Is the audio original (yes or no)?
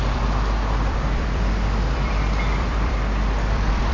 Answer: no